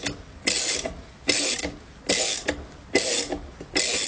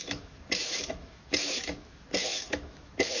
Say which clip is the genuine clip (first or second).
first